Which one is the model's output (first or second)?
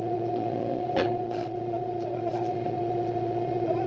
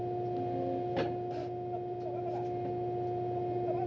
first